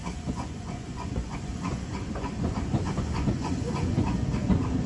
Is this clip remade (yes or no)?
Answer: yes